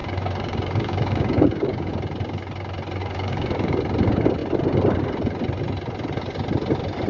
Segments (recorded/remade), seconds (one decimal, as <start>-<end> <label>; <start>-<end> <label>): 0.0-1.9 remade; 1.9-3.0 recorded; 3.0-3.8 remade; 3.8-7.1 recorded